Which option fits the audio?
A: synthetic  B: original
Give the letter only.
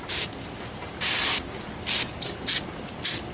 B